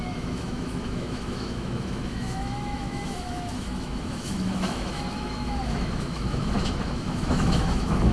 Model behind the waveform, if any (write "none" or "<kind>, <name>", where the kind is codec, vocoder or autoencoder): autoencoder, DAC-VAE